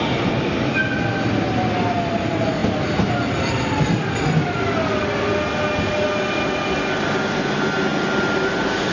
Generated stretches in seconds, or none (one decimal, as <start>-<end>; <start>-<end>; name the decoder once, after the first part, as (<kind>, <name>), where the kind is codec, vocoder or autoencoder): none